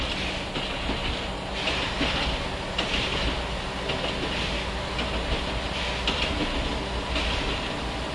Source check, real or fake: real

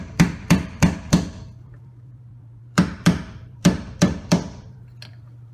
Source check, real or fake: fake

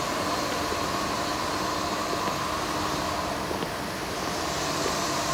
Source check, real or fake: real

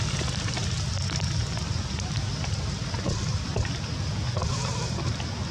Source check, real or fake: real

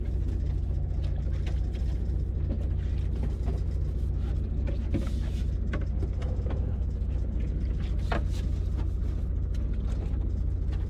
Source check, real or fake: real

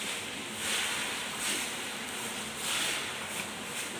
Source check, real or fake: real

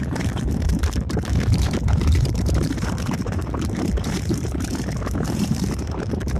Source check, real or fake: fake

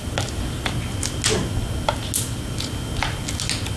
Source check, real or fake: real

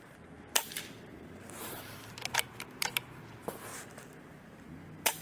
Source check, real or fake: fake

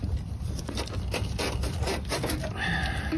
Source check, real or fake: fake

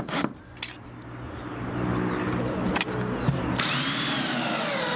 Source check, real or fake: real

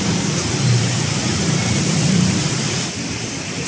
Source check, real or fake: fake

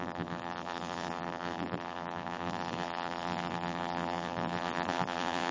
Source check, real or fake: fake